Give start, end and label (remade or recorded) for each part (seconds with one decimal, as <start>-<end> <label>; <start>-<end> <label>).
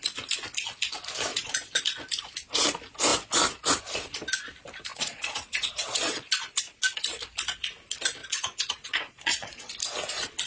0.0-1.3 recorded; 1.3-1.8 remade; 1.8-4.9 recorded; 4.9-6.2 remade; 6.2-8.2 recorded; 8.2-9.7 remade; 9.7-10.5 recorded